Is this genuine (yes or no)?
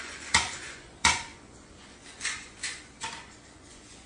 no